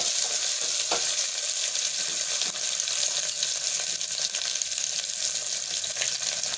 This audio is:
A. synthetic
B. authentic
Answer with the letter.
B